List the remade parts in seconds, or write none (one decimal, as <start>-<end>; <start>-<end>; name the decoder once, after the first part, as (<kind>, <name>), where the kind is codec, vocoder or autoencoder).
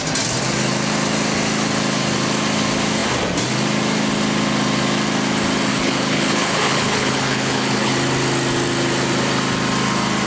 5.7-7.9 (codec, HILCodec)